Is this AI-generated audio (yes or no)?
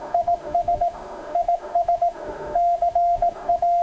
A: yes